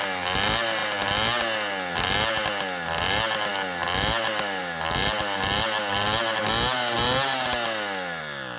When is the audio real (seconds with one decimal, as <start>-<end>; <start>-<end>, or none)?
0.0-8.6

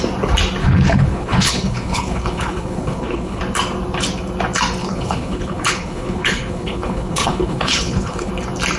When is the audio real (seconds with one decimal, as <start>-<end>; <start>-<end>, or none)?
0.0-0.6; 3.4-4.8; 8.3-8.8

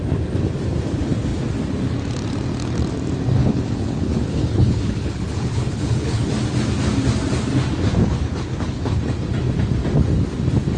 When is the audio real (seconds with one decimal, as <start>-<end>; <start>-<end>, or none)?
0.0-3.4; 6.3-8.0; 9.0-10.8

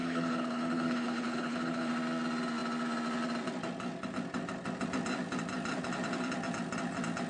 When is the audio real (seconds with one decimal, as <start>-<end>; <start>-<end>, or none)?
1.9-7.3

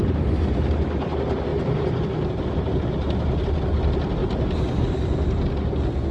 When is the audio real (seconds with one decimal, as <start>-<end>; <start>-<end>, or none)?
0.0-6.1